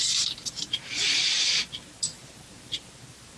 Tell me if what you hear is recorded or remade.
remade